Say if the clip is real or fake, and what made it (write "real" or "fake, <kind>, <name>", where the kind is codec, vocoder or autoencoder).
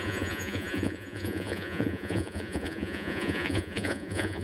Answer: fake, vocoder, Vocos